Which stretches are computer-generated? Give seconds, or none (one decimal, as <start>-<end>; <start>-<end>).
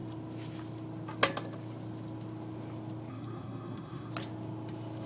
3.1-4.1